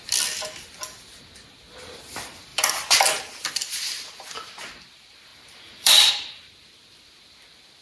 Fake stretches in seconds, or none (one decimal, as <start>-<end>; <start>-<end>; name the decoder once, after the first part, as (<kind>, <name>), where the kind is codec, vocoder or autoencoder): 2.5-3.2 (vocoder, BigVGAN v2); 5.3-6.1

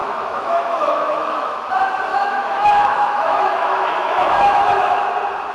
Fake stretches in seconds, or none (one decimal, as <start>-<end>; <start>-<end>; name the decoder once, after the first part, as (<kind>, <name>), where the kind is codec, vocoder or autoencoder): 0.0-1.6 (autoencoder, DAC-VAE); 2.1-5.0

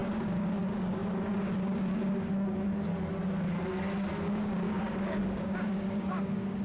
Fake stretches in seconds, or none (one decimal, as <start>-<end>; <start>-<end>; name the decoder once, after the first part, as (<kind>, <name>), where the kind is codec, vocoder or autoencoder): 0.0-2.9 (codec, DAC); 4.2-6.6